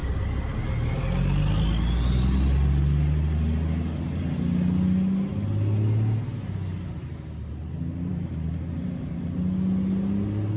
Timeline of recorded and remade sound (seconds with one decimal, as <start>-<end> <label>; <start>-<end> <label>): 0.0-8.1 recorded; 8.1-9.2 remade; 9.2-10.6 recorded